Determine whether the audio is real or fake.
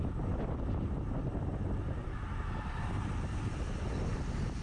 real